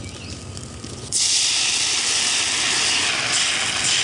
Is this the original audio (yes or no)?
yes